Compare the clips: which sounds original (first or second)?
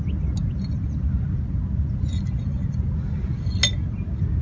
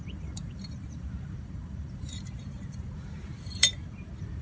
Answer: first